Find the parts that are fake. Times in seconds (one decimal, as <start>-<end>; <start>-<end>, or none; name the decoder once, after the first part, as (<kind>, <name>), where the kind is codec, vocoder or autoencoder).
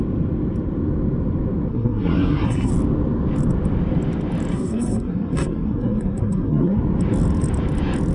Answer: 1.7-2.7 (codec, SNAC); 4.5-6.8